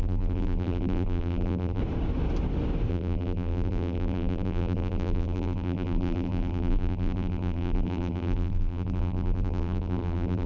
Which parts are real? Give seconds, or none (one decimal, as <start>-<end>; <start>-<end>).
1.8-2.9